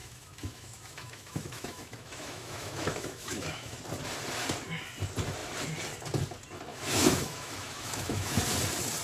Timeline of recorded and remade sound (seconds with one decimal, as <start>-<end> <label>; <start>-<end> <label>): 0.0-3.8 remade; 3.8-6.7 recorded; 6.7-8.4 remade; 8.4-9.0 recorded